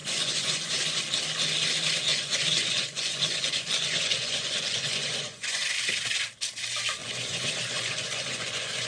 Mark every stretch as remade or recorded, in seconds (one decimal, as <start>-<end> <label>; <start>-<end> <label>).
0.0-1.0 remade; 1.0-2.1 recorded; 2.1-5.6 remade; 5.6-7.0 recorded; 7.0-8.9 remade